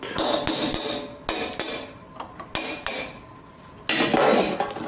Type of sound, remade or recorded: recorded